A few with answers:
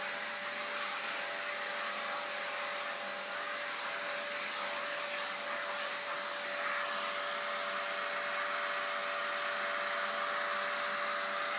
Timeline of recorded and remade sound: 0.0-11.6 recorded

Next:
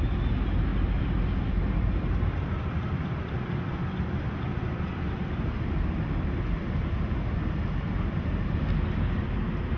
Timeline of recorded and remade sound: 0.0-0.7 recorded; 0.7-5.9 remade; 5.9-9.8 recorded